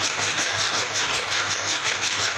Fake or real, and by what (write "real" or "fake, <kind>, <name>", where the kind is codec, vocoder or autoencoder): fake, codec, DAC